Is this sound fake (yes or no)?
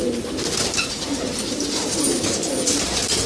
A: no